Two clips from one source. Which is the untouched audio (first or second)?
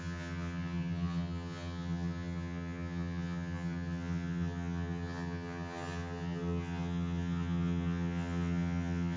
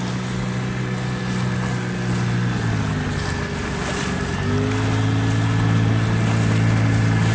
second